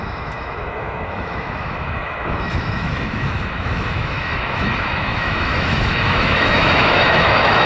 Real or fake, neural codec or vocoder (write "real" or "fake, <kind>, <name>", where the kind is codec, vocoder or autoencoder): fake, autoencoder, DAC-VAE